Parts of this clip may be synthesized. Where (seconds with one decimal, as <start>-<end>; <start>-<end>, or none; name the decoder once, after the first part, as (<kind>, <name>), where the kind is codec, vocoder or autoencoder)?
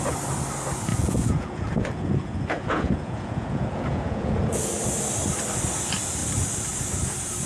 0.9-4.7 (vocoder, Vocos)